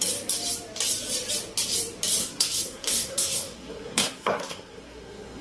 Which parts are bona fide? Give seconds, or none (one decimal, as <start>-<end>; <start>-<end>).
0.0-2.2